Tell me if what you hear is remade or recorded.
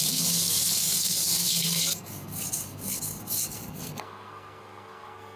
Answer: remade